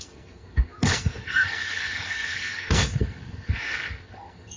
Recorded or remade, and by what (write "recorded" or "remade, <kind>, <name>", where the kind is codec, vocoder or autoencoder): remade, codec, SNAC